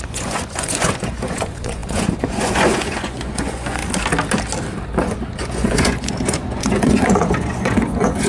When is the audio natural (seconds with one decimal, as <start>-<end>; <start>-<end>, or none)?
3.8-5.0